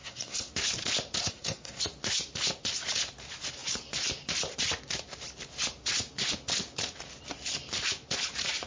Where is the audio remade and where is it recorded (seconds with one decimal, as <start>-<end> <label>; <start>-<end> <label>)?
0.0-0.5 remade; 0.5-1.2 recorded; 1.2-1.8 remade; 1.8-8.7 recorded

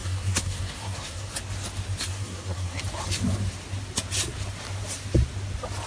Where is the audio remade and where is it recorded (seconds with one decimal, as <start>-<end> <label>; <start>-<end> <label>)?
0.0-1.3 remade; 1.3-2.1 recorded; 2.1-2.8 remade; 2.8-5.9 recorded

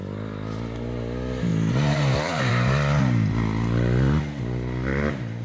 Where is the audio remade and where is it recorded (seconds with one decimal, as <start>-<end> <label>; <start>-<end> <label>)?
0.0-5.4 recorded